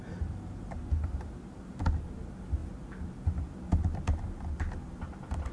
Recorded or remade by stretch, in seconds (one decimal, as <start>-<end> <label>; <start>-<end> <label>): 0.0-5.5 recorded